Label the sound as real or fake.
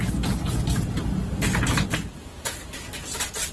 real